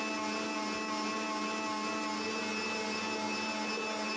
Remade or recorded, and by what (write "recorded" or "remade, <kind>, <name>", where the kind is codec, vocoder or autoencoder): recorded